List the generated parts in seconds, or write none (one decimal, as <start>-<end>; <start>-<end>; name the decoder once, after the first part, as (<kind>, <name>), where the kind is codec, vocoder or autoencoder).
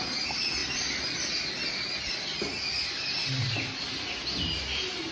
none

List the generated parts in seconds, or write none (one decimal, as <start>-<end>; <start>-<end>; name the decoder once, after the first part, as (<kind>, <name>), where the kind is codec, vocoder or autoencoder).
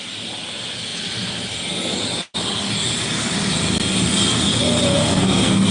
5.0-5.7 (codec, SNAC)